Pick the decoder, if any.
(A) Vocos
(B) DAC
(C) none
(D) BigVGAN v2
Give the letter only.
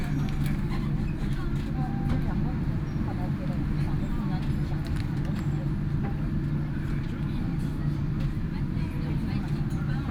C